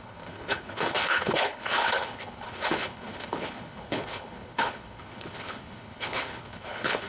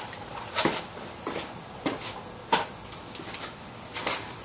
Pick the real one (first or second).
second